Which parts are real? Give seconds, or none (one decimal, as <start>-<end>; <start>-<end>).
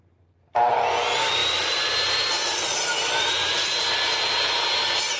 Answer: 0.0-1.4; 3.8-5.2